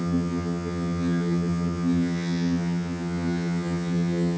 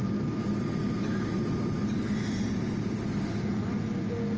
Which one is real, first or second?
second